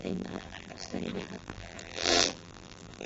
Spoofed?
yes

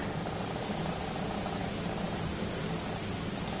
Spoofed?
no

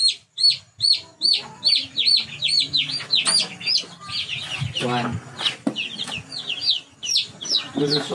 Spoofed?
no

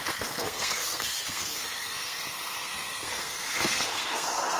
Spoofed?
yes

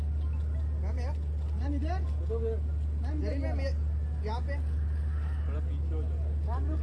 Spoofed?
no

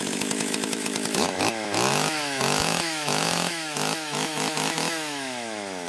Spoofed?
yes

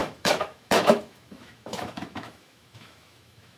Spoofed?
yes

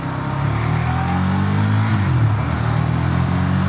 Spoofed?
no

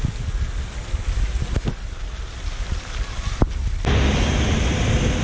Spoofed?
no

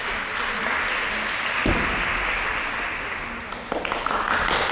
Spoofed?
no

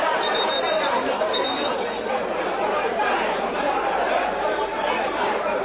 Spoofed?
yes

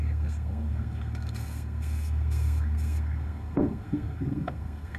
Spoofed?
yes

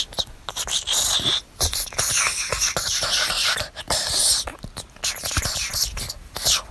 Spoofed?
no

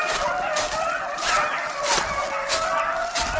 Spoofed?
no